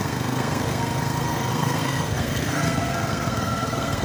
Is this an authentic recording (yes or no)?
no